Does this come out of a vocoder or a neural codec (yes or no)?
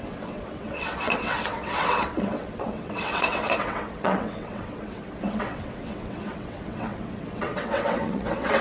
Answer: yes